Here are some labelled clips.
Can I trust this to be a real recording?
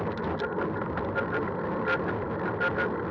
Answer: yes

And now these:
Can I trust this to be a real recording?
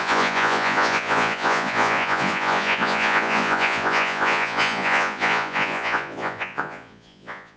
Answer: no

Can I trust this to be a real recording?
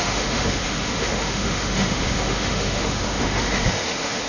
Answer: no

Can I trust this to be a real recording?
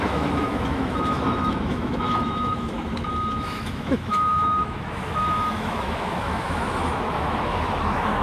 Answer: no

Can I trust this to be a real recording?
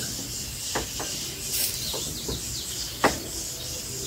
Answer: yes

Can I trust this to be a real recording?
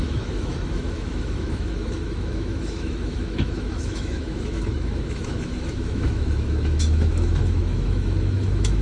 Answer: no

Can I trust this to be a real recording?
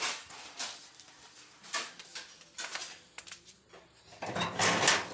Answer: yes